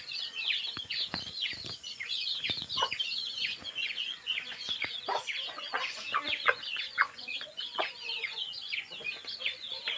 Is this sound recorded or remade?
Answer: remade